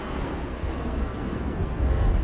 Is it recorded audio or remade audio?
remade